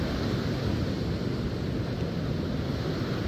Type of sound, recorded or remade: recorded